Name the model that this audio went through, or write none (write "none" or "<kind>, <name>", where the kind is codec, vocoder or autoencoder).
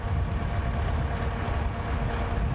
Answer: none